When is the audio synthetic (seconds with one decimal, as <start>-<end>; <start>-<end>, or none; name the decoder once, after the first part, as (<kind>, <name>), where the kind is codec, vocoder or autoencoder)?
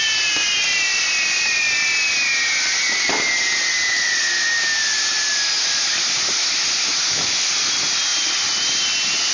none